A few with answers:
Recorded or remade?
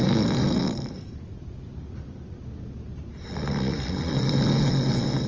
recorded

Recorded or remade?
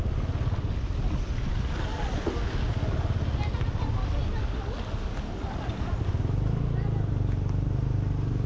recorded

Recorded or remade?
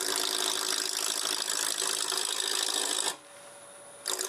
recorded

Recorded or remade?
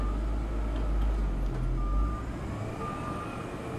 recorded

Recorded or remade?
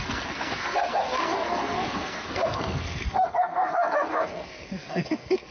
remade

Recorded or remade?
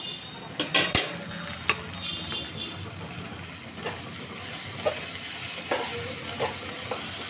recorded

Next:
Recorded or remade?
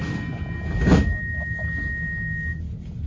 recorded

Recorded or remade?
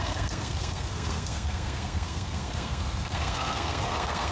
remade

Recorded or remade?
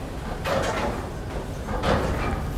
recorded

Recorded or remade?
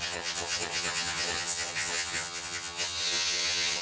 remade